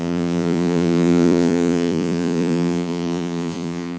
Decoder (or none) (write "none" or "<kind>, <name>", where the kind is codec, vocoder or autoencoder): vocoder, Vocos